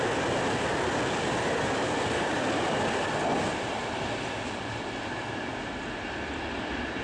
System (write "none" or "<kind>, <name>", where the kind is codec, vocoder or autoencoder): none